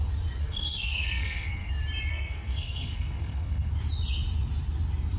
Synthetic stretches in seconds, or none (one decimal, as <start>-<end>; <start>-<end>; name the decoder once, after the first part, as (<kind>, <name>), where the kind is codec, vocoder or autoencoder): 0.4-1.7 (codec, SNAC); 2.1-3.7